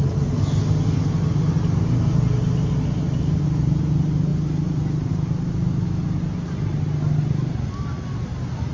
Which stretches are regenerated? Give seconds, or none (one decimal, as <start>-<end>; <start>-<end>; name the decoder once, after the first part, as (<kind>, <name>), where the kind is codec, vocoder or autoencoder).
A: none